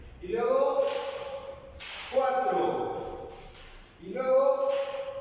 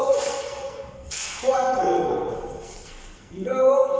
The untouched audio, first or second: first